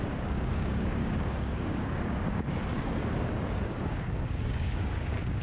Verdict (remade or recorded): remade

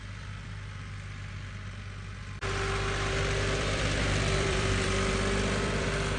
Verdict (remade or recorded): remade